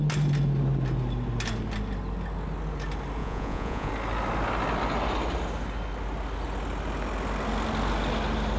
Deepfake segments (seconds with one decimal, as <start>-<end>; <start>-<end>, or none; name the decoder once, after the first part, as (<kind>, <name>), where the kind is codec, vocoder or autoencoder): 3.2-3.9 (vocoder, Vocos)